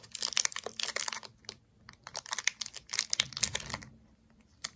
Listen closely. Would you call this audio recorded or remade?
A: recorded